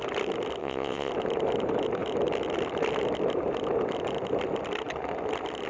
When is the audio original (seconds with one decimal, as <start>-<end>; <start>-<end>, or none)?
0.0-0.6; 1.1-5.7